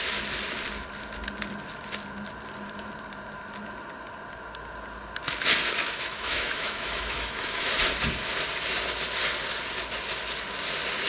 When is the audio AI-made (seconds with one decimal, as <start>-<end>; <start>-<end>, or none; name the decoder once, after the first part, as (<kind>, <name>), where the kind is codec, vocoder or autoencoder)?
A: 5.8-7.7 (autoencoder, DAC-VAE)